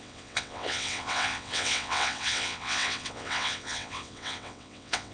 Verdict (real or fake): fake